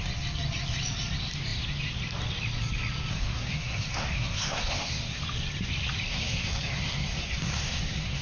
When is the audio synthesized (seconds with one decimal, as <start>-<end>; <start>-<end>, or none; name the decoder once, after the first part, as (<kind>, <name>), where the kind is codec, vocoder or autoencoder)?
3.1-5.2 (codec, SNAC); 6.1-8.2